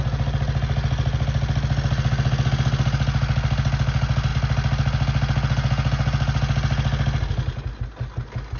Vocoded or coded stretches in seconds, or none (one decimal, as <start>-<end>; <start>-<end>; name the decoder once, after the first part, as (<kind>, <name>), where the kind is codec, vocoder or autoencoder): none